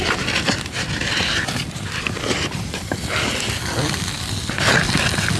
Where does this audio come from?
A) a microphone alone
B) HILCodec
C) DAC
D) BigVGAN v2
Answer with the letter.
A